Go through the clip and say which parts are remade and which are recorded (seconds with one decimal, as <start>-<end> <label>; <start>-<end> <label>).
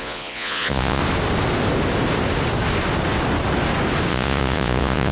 0.0-1.0 remade; 1.0-4.1 recorded; 4.1-5.1 remade